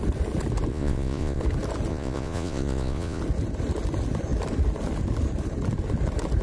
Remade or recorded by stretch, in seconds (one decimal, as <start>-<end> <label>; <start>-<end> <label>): 0.0-0.7 recorded; 0.7-1.4 remade; 1.4-1.9 recorded; 1.9-3.2 remade; 3.2-6.4 recorded